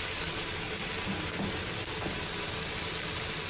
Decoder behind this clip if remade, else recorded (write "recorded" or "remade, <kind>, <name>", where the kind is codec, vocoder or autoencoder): recorded